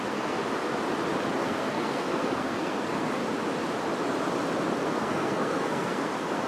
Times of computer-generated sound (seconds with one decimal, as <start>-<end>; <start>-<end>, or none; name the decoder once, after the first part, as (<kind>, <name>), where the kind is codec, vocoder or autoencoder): 0.0-0.4 (codec, SNAC); 1.4-3.2; 4.8-6.5